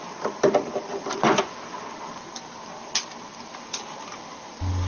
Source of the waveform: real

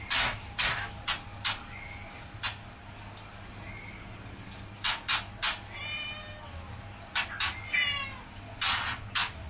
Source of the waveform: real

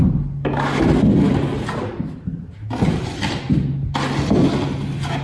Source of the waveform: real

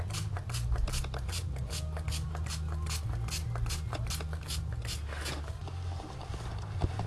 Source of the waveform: real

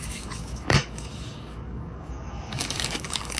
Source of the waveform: fake